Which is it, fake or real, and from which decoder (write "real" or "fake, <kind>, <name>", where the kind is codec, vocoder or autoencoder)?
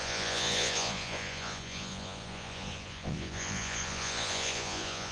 fake, vocoder, Vocos